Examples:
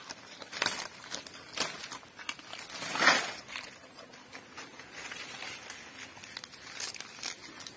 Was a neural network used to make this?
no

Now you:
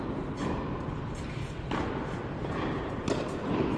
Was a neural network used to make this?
no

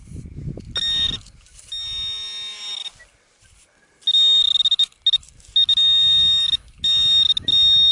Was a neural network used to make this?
no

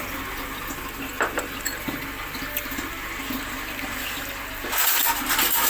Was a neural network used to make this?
no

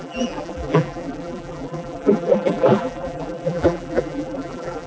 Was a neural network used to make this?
yes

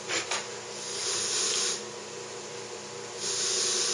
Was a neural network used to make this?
no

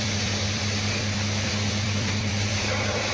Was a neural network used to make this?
yes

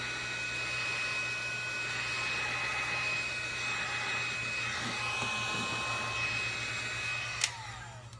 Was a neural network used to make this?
no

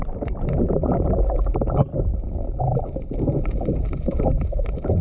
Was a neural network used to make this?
yes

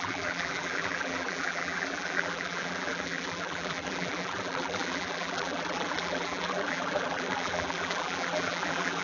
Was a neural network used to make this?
yes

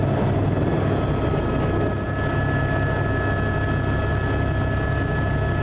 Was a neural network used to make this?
no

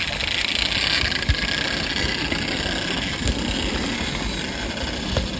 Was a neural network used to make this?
no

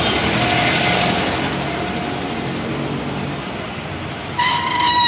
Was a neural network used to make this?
no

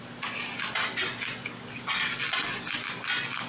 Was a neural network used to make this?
no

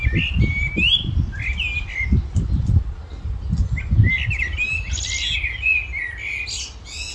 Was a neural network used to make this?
no